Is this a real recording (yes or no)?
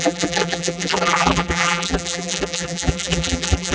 no